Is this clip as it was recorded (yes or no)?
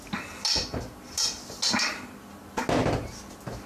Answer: yes